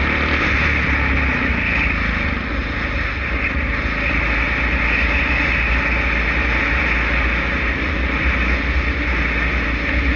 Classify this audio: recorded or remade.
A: recorded